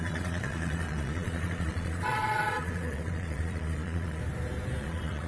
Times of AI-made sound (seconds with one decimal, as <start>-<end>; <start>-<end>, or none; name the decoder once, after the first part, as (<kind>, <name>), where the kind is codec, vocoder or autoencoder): 0.0-4.2 (vocoder, Vocos); 4.8-5.3